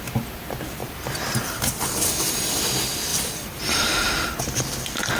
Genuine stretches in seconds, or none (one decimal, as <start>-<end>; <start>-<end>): 0.0-0.8; 2.6-3.1; 4.6-5.2

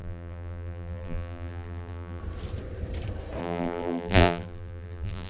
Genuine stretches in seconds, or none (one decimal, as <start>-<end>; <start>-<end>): 2.2-3.4

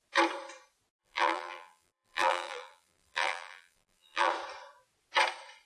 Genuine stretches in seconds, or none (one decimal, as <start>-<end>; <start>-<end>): 0.0-1.0; 4.3-5.7

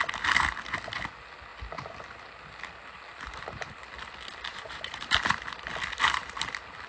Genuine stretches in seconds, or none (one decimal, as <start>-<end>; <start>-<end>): 0.0-3.1; 3.9-4.5; 5.2-6.9

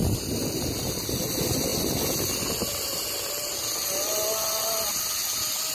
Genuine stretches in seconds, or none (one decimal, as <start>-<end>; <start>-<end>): 0.0-5.7

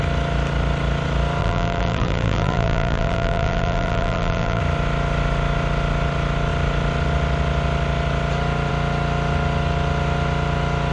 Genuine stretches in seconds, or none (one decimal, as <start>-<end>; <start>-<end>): 0.0-1.4; 4.6-10.9

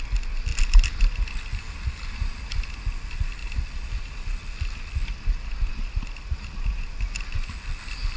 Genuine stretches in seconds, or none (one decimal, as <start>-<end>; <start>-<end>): 0.0-8.2

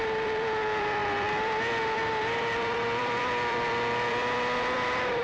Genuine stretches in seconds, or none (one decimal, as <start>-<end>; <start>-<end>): none